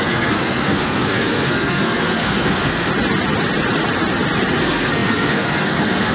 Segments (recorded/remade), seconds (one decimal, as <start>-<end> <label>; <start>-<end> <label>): 0.0-2.9 remade; 2.9-4.6 recorded; 4.6-6.1 remade